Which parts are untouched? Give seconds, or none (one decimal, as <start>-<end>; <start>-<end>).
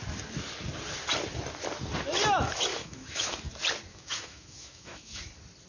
0.0-2.7; 3.5-3.9; 5.2-5.7